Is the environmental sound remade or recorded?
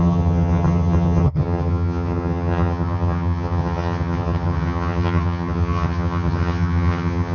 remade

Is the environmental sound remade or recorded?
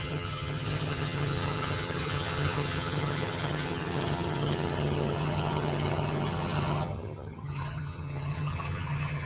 remade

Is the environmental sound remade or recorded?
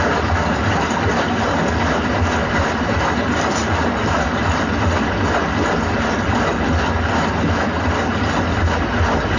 recorded